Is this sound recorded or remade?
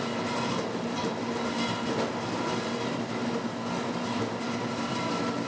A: recorded